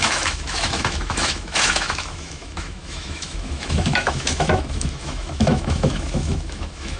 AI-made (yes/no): yes